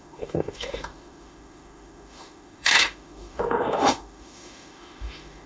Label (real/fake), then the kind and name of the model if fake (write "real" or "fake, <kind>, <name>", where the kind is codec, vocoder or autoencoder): fake, autoencoder, DAC-VAE